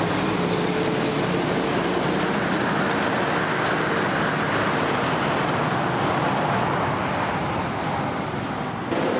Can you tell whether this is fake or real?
real